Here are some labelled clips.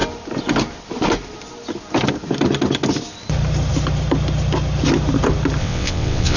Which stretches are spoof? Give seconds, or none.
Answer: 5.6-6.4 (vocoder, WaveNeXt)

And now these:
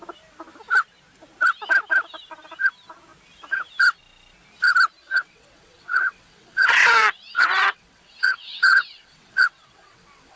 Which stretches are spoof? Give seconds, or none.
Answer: 5.0-10.4 (vocoder, WaveNeXt)

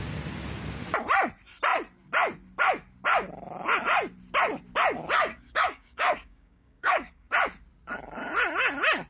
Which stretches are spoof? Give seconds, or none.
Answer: 5.3-7.3 (codec, DAC)